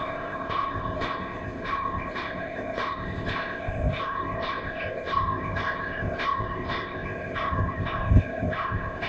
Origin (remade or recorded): remade